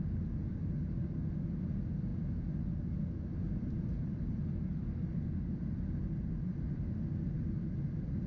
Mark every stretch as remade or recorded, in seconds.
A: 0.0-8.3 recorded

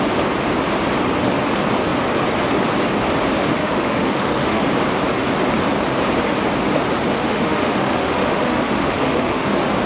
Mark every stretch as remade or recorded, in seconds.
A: 0.0-3.3 recorded; 3.3-4.6 remade; 4.6-7.2 recorded; 7.2-9.5 remade; 9.5-9.9 recorded

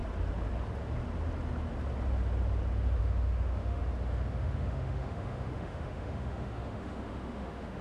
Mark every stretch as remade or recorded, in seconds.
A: 0.0-3.0 recorded; 3.0-3.8 remade; 3.8-4.3 recorded; 4.3-7.8 remade

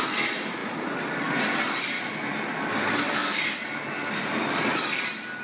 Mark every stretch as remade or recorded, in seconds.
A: 0.0-5.4 recorded

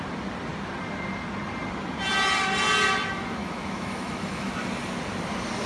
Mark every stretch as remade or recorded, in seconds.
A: 0.0-3.4 recorded; 3.4-4.5 remade; 4.5-5.7 recorded

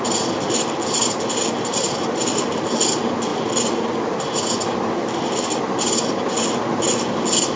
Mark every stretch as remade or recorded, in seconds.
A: 0.0-7.6 recorded